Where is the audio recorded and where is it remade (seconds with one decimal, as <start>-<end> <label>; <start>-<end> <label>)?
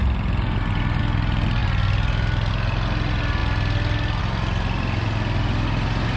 0.0-6.2 recorded